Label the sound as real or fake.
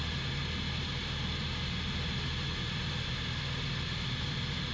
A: real